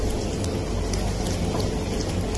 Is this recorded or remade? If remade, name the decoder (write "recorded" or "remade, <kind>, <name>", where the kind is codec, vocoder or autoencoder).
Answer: recorded